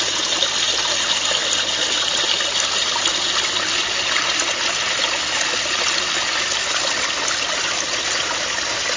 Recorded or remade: recorded